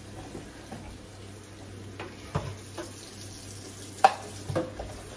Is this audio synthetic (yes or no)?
no